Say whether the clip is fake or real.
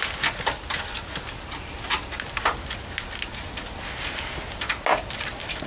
real